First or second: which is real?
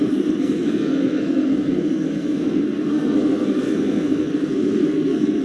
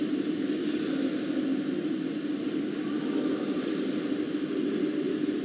second